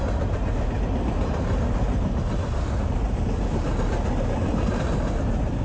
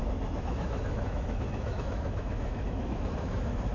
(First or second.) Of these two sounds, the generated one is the second